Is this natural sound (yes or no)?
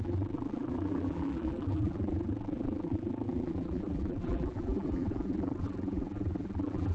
no